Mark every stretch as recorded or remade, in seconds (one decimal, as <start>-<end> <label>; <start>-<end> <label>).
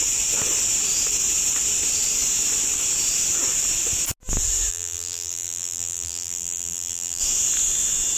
0.0-4.7 recorded; 4.7-7.2 remade; 7.2-8.2 recorded